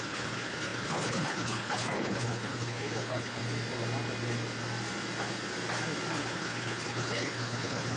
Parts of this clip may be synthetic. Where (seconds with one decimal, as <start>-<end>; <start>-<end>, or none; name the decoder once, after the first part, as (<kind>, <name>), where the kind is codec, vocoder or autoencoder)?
0.0-3.4 (codec, HILCodec); 6.2-8.0